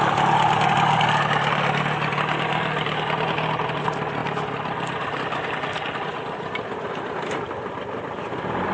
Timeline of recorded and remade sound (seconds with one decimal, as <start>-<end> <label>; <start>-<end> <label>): 0.0-8.7 recorded